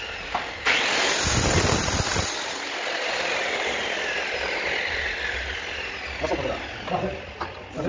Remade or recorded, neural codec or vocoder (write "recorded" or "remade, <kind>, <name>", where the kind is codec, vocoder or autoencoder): recorded